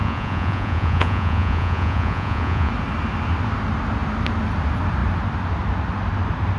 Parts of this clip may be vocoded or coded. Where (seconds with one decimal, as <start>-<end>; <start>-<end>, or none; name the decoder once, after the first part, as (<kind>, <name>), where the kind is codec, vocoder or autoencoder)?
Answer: 0.0-2.7 (vocoder, Vocos)